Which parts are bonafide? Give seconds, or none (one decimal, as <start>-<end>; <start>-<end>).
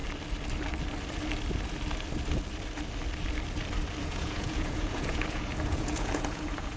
0.0-4.0